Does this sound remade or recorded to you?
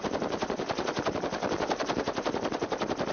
remade